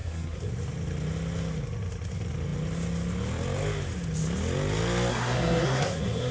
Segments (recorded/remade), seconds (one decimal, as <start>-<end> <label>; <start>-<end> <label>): 0.0-0.5 remade; 0.5-5.1 recorded; 5.1-6.3 remade